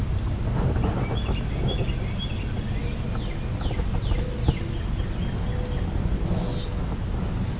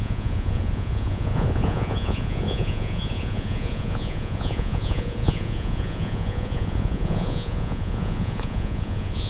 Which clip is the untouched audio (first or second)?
first